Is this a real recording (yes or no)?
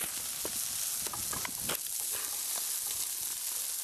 yes